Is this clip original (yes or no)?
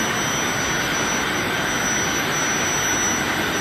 yes